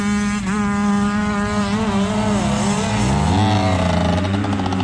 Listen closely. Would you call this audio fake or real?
real